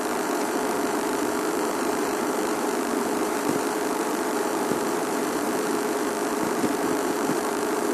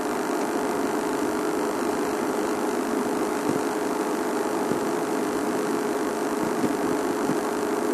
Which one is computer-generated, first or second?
first